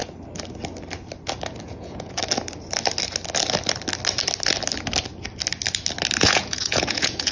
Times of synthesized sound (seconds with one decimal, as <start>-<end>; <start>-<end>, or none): 1.6-2.2; 6.2-7.3